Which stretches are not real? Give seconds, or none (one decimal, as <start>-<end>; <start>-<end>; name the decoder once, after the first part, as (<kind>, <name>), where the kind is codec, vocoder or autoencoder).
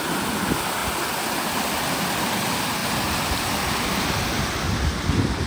none